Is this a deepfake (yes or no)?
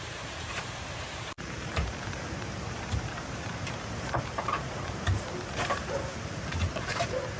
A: yes